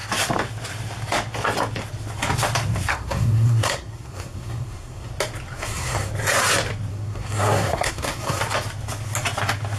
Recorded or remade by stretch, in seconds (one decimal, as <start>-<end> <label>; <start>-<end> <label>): 0.0-2.9 recorded; 2.9-5.1 remade; 5.1-5.5 recorded; 5.5-6.1 remade; 6.1-6.9 recorded; 6.9-8.4 remade; 8.4-9.8 recorded